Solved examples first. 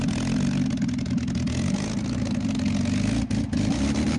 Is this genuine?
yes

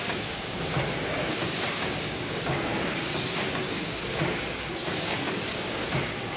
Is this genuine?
no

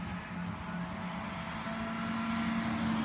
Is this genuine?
yes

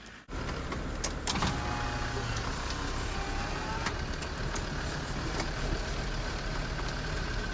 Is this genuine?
yes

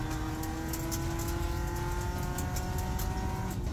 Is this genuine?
yes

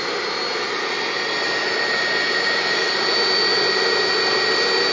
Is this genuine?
yes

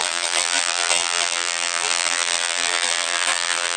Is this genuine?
no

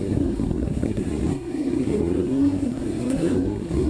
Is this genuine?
no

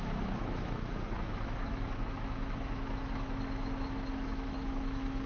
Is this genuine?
no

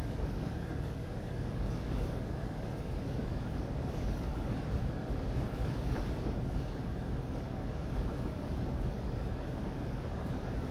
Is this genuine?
no